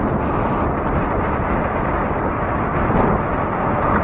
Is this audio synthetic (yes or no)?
no